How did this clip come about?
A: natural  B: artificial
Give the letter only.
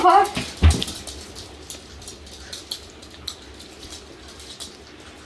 A